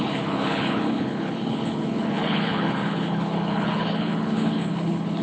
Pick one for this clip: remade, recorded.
remade